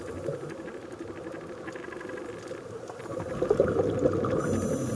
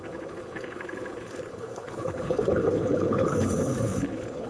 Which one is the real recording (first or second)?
first